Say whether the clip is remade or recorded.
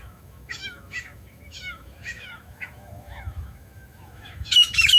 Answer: remade